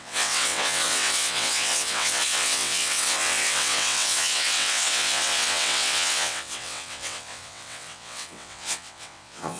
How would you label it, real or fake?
fake